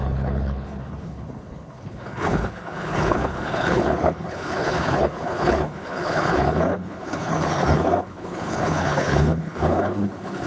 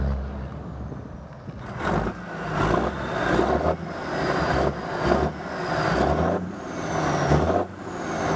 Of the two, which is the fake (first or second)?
first